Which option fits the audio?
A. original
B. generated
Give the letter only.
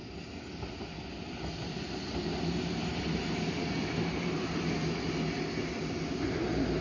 A